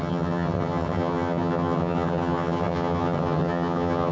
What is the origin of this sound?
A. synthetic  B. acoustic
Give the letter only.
A